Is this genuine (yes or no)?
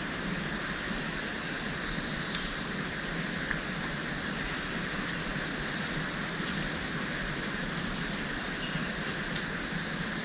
yes